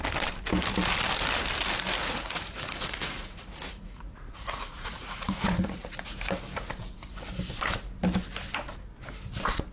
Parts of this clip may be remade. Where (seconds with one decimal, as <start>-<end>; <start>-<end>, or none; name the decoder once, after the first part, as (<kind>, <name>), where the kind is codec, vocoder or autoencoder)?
2.0-6.2 (vocoder, Vocos)